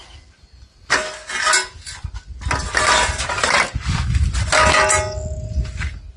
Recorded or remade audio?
recorded